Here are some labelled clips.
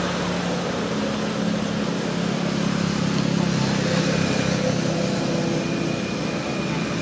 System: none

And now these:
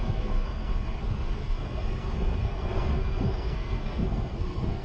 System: codec, SNAC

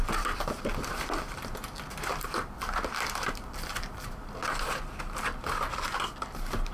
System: none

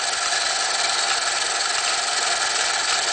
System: none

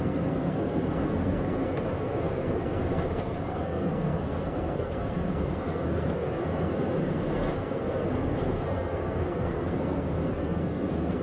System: codec, SNAC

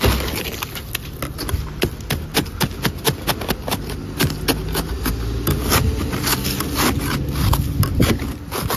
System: none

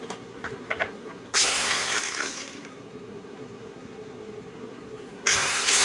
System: codec, SNAC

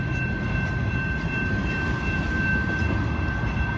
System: none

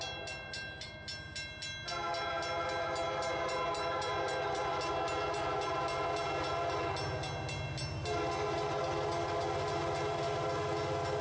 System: none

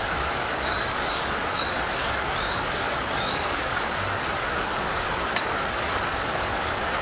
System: codec, DAC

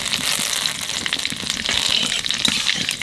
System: none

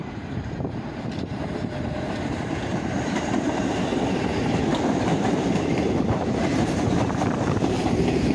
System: vocoder, BigVGAN v2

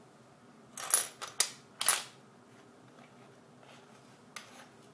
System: none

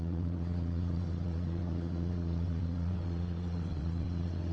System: vocoder, WaveNeXt